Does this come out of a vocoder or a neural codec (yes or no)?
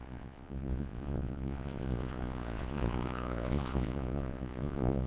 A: yes